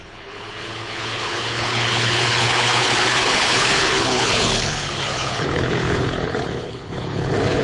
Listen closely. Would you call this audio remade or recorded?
remade